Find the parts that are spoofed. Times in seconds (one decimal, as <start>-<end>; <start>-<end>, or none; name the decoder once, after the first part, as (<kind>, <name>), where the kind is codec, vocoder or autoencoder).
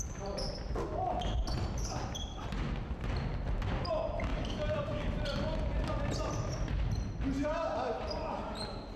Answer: 4.3-5.0 (vocoder, BigVGAN v2); 7.4-8.4